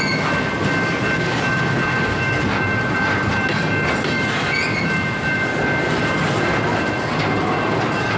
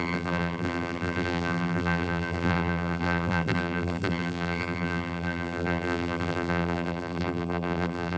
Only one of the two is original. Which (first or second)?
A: first